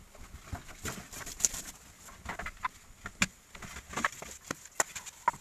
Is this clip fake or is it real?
real